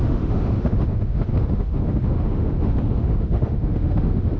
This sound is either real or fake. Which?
fake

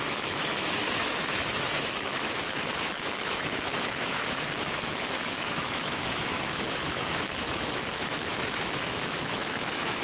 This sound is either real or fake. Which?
fake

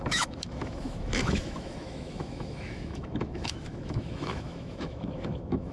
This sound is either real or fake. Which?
fake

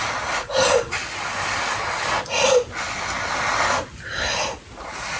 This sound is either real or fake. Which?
real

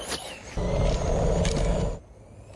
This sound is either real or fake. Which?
real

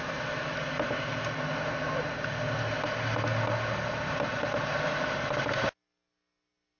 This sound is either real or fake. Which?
real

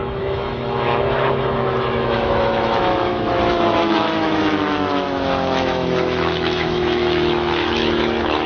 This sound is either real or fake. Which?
fake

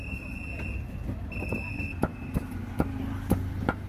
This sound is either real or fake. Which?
real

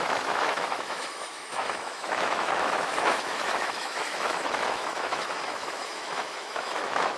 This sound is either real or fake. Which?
fake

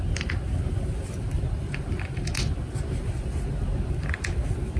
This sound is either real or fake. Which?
real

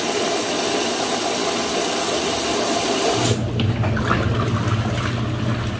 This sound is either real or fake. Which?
real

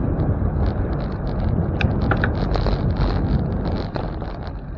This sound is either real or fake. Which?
real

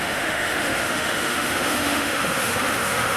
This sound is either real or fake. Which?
fake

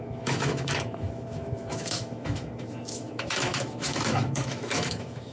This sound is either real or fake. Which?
fake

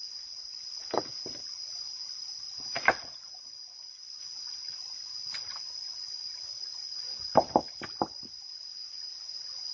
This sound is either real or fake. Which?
real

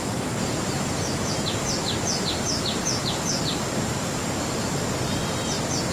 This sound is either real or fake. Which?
real